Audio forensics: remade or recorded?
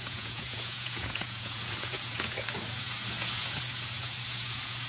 remade